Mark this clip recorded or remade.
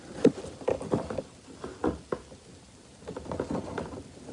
remade